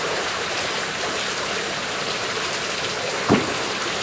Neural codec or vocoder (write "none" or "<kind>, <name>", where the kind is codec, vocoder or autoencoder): none